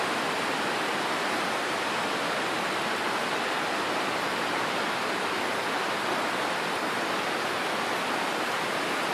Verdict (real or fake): real